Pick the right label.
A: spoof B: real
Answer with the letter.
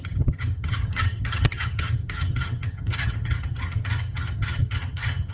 A